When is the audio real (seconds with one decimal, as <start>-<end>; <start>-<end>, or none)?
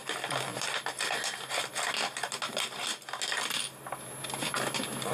0.0-5.1